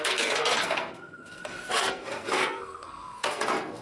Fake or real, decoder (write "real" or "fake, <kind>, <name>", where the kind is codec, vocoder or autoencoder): fake, codec, SNAC